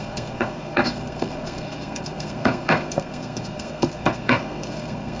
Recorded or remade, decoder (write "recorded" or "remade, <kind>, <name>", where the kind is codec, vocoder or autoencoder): remade, codec, SNAC